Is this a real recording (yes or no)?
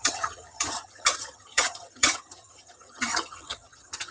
no